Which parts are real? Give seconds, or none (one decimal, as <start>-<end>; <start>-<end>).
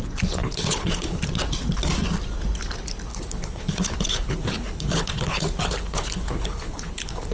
0.0-0.4; 1.2-3.1